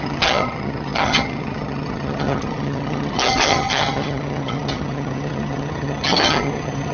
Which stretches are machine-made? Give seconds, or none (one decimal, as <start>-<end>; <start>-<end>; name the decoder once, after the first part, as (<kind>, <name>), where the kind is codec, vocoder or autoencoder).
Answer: 0.0-6.9 (vocoder, HiFi-GAN)